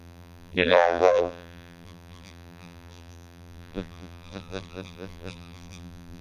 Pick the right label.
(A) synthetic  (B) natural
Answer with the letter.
A